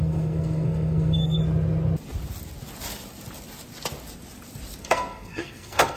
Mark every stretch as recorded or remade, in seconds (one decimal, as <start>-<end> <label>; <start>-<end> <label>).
0.0-1.4 remade; 1.4-4.8 recorded; 4.8-6.0 remade